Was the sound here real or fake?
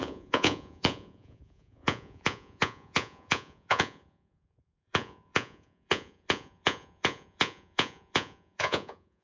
fake